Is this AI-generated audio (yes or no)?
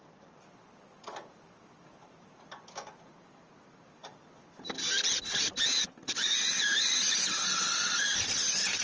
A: no